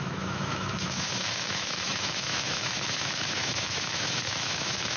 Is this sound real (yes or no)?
no